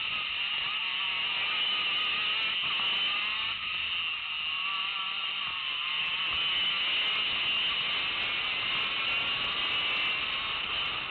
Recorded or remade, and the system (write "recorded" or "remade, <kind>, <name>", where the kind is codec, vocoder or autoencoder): recorded